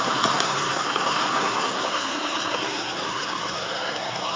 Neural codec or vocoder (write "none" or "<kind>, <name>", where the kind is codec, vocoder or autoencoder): codec, SNAC